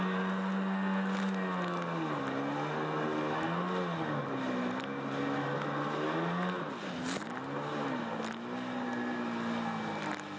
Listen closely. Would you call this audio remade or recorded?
recorded